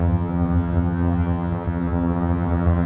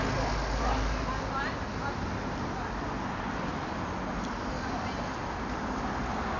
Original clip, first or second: second